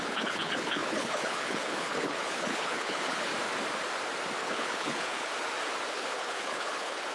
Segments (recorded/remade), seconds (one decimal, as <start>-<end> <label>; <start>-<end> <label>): 0.0-3.3 remade; 3.3-4.4 recorded; 4.4-5.3 remade; 5.3-5.9 recorded; 5.9-7.1 remade